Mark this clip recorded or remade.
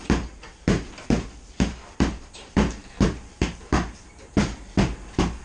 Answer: remade